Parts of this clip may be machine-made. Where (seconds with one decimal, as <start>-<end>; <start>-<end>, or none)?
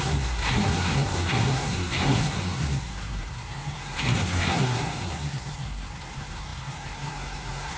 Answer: 0.0-7.8